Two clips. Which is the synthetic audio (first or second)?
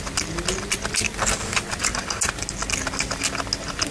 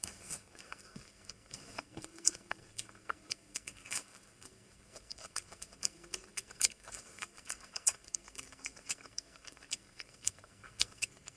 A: second